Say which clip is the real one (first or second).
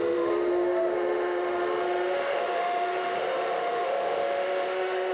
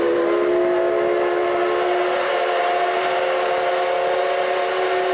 second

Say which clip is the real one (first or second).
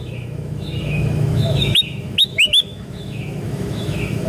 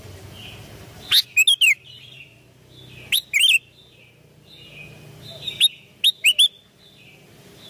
second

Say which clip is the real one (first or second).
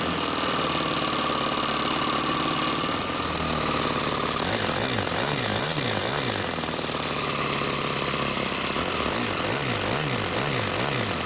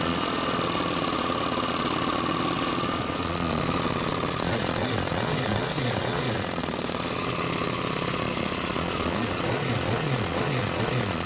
first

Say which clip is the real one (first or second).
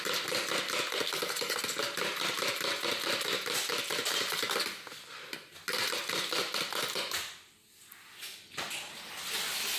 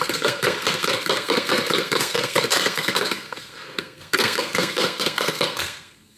first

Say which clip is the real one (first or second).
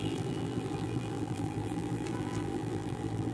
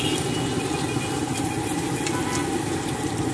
second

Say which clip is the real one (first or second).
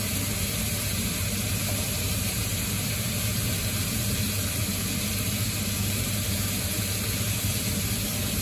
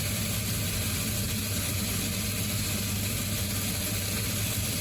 second